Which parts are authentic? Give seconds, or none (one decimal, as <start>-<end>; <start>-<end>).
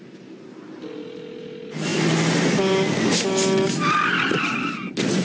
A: 0.0-5.2